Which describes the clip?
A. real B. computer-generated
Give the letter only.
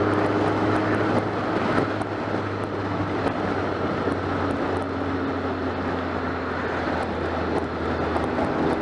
A